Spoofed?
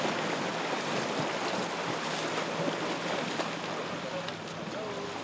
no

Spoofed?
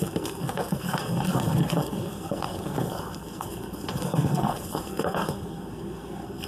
yes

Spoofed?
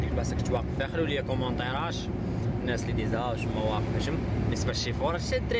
no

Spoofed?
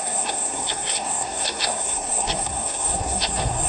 yes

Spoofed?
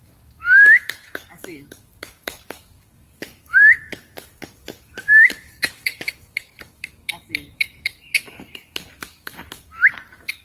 yes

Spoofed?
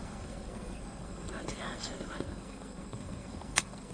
yes